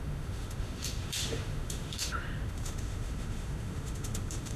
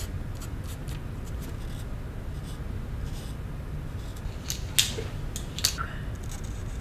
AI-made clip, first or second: first